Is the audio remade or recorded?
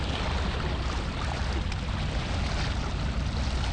recorded